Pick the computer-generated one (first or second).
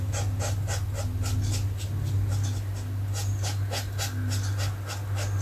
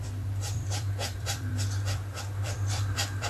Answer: second